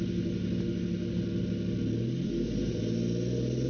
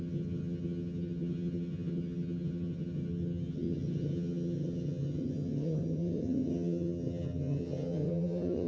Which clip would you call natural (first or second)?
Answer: first